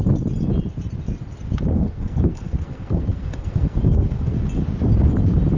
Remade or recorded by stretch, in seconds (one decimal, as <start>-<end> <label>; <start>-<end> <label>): 0.0-1.7 recorded; 1.7-4.4 remade; 4.4-5.6 recorded

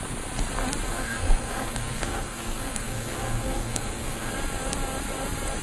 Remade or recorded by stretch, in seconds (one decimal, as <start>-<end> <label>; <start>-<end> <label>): 0.0-0.9 recorded; 0.9-4.3 remade; 4.3-5.6 recorded

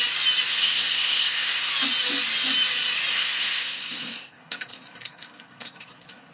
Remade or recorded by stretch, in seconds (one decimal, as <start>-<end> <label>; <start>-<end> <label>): 0.0-0.5 recorded; 0.5-1.7 remade; 1.7-3.1 recorded; 3.1-6.3 remade

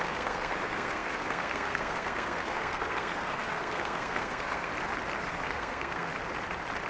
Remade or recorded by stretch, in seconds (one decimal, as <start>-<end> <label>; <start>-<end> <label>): 0.0-4.7 remade; 4.7-5.2 recorded; 5.2-6.1 remade; 6.1-6.9 recorded

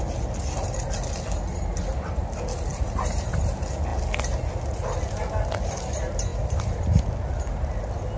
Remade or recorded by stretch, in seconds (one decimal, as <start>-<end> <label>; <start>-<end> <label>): 0.0-2.7 recorded; 2.7-3.4 remade; 3.4-6.3 recorded; 6.3-7.1 remade; 7.1-8.2 recorded

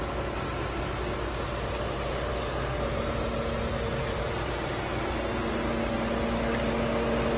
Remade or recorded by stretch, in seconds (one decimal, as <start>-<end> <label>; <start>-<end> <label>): 0.0-2.1 recorded; 2.1-2.8 remade; 2.8-7.4 recorded

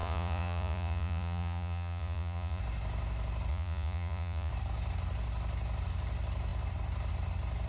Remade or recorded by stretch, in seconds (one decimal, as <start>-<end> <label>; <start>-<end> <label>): 0.0-2.6 remade; 2.6-3.5 recorded; 3.5-4.5 remade; 4.5-7.7 recorded